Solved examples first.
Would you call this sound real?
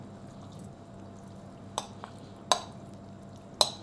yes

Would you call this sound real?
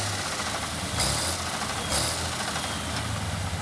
yes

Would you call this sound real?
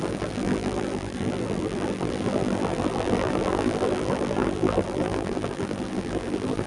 no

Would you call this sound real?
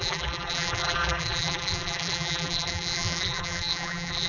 no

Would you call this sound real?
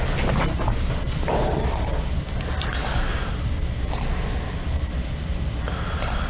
yes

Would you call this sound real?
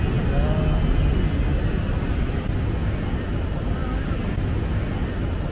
yes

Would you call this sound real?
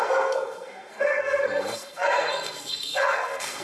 no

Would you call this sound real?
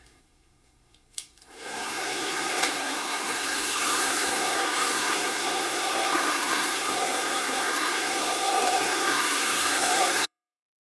no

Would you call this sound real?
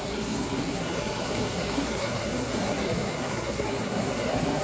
no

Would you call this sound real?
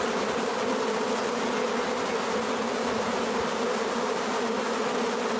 yes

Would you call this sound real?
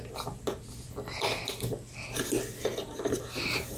yes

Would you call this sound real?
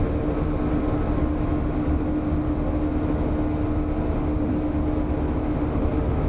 yes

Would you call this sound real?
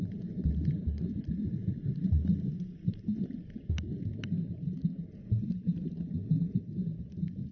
no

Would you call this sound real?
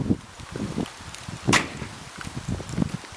yes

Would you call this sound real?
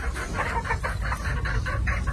yes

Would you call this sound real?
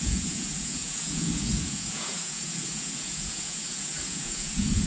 no